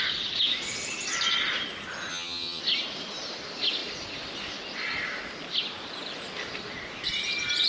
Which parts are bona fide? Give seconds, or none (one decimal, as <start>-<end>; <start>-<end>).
0.0-2.1; 2.6-7.7